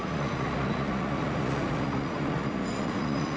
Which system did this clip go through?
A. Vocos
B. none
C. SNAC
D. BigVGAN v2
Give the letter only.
A